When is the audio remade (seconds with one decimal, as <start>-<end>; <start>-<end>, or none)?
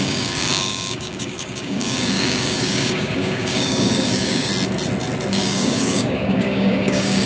0.0-4.5; 5.3-7.3